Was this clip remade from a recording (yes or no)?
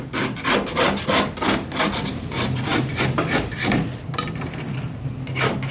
no